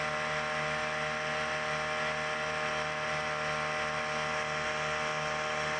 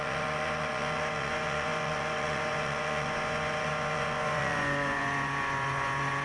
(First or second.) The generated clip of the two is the second